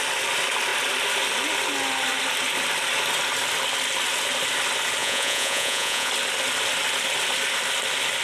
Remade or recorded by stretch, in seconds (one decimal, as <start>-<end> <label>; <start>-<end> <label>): 0.0-5.0 recorded; 5.0-6.1 remade; 6.1-8.2 recorded